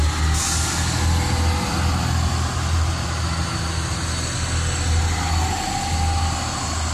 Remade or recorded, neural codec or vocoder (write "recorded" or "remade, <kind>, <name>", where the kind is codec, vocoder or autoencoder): recorded